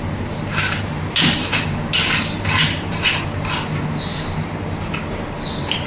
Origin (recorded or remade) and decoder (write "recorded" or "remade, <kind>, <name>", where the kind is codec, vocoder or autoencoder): remade, vocoder, BigVGAN v2